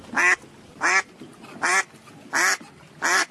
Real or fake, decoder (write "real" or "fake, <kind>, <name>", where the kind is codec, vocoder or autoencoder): real